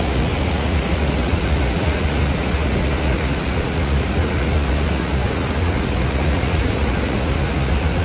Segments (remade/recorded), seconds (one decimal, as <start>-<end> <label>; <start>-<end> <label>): 0.0-8.0 remade

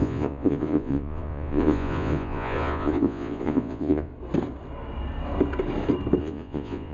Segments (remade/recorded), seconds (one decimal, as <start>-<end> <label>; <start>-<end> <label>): 0.0-4.1 remade; 4.1-6.2 recorded; 6.2-6.9 remade

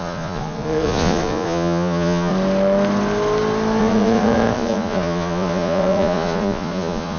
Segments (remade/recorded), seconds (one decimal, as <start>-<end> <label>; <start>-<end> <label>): 0.0-2.3 remade; 2.3-3.8 recorded; 3.8-7.2 remade